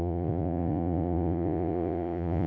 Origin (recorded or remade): remade